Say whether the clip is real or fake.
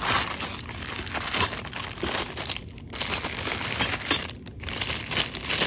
real